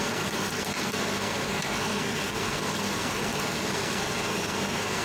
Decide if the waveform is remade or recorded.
remade